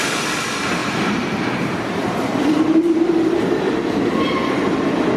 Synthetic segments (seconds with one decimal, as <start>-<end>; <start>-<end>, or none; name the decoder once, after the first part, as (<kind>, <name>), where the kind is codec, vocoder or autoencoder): 0.0-5.2 (vocoder, BigVGAN v2)